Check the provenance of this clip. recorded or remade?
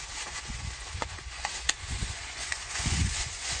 remade